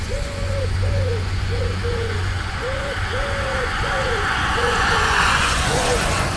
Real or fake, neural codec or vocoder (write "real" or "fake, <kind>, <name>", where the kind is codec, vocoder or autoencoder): fake, vocoder, Vocos